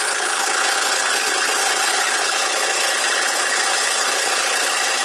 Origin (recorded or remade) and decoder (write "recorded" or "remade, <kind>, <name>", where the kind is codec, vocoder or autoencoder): remade, codec, HILCodec